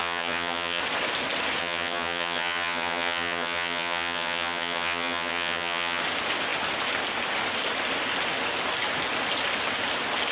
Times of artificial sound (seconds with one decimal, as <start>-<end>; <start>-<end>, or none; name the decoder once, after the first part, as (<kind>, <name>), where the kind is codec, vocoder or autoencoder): 0.0-0.8 (vocoder, HiFi-GAN); 1.6-6.0